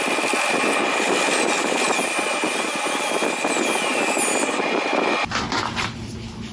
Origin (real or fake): real